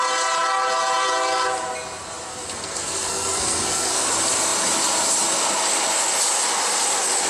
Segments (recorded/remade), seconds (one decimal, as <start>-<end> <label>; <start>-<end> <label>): 0.0-2.3 recorded; 2.3-4.1 remade; 4.1-7.3 recorded